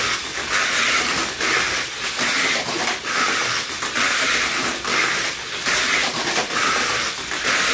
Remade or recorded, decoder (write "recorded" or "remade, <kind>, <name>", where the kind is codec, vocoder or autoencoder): recorded